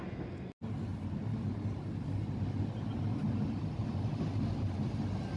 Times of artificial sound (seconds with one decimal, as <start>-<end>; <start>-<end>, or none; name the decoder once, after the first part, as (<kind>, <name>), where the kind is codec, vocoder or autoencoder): none

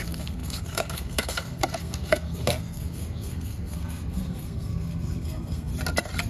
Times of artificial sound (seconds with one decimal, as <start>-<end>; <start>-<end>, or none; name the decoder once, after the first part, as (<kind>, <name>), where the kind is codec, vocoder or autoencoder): 0.0-5.7 (codec, SNAC)

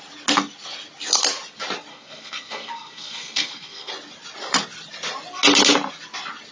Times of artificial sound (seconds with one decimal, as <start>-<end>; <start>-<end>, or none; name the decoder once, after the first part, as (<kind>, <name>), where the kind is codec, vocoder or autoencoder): 1.9-3.9 (codec, SNAC)

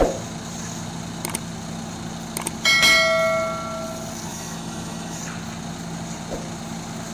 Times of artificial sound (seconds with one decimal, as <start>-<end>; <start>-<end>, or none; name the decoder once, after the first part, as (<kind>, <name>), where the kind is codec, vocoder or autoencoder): 4.3-5.2 (autoencoder, DAC-VAE)

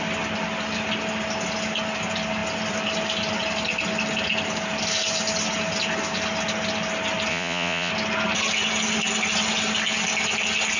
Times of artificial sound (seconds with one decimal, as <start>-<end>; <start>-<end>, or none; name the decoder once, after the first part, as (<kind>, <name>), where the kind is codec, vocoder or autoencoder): 7.3-7.9 (vocoder, Vocos)

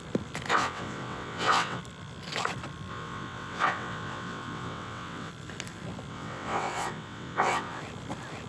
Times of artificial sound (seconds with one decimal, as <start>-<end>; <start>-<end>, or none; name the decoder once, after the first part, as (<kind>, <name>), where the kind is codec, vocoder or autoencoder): 0.5-1.8 (vocoder, WaveNeXt); 2.9-5.3; 6.1-7.8

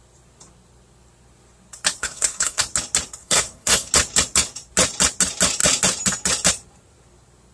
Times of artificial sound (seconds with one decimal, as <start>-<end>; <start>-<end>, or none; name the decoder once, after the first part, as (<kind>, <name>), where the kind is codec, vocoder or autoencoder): 2.0-2.6 (codec, SNAC); 3.2-3.9

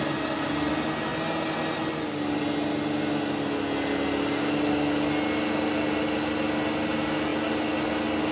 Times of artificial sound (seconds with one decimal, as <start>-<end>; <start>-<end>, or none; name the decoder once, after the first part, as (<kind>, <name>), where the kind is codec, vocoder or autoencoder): none